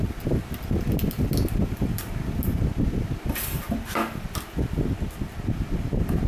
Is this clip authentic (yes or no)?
yes